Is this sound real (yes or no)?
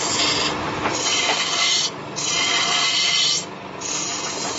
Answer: yes